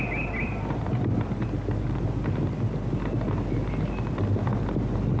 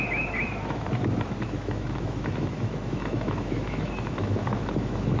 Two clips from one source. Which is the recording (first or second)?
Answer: first